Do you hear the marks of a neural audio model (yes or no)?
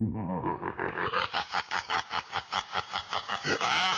yes